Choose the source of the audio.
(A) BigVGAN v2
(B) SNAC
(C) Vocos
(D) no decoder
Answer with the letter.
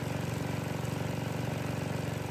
D